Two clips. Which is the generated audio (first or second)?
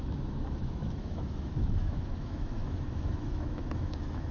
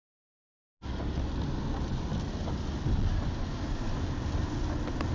first